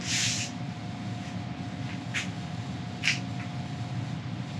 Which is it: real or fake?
real